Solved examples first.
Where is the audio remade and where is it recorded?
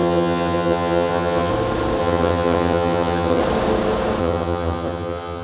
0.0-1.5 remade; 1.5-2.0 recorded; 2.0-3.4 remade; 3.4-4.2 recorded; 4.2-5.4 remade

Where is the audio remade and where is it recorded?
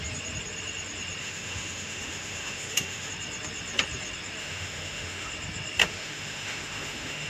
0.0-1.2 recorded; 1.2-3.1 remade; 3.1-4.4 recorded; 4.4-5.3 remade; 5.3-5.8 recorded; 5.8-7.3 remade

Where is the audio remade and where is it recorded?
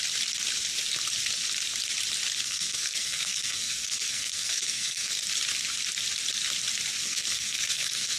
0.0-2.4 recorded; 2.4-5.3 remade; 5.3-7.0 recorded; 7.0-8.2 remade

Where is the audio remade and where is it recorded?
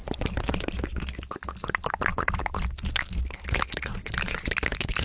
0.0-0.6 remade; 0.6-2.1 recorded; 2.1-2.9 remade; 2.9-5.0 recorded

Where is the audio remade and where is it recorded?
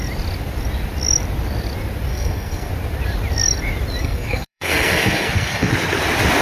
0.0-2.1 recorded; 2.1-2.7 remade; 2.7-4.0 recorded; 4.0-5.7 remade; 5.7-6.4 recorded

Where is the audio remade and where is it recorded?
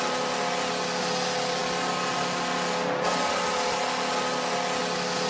0.0-5.3 recorded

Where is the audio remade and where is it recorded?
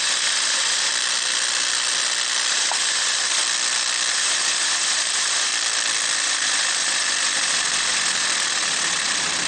0.0-0.9 remade; 0.9-2.5 recorded; 2.5-3.4 remade; 3.4-4.1 recorded; 4.1-5.5 remade; 5.5-6.2 recorded; 6.2-9.5 remade